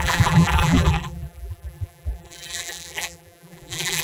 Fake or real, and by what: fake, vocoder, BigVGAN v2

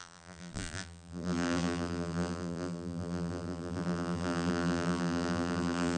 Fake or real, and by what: fake, vocoder, BigVGAN v2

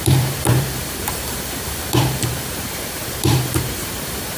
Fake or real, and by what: fake, vocoder, BigVGAN v2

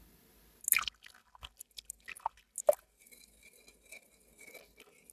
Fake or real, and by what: real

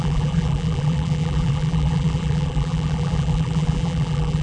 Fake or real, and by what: fake, vocoder, BigVGAN v2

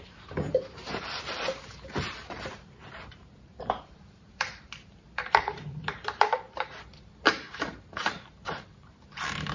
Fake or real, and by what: fake, vocoder, BigVGAN v2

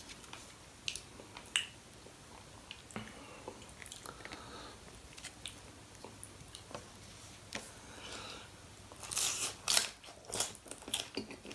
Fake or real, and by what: real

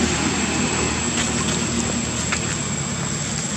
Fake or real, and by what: real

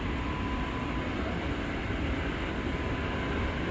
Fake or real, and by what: real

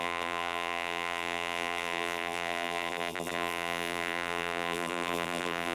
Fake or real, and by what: fake, vocoder, BigVGAN v2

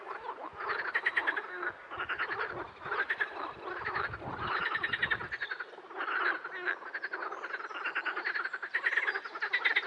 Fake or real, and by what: real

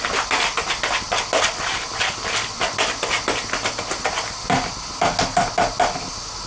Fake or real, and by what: real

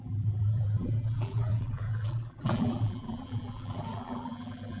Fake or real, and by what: fake, vocoder, BigVGAN v2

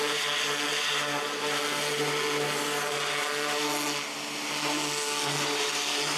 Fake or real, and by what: real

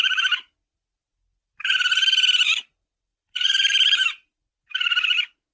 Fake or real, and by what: fake, vocoder, BigVGAN v2